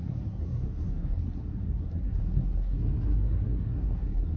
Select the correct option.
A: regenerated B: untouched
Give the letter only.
A